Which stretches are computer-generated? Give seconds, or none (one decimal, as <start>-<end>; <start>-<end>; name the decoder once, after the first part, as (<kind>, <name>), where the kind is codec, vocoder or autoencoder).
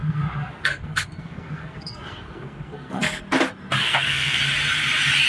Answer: 0.0-3.2 (codec, SNAC); 3.8-4.4